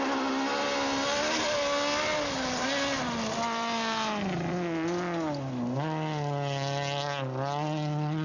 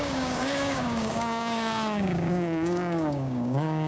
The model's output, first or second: second